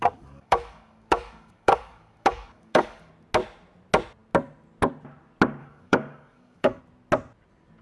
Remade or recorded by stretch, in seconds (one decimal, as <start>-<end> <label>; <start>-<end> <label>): 0.0-3.1 remade; 3.1-5.6 recorded; 5.6-6.8 remade; 6.8-7.8 recorded